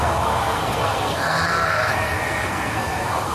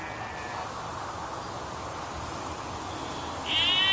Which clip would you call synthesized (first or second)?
first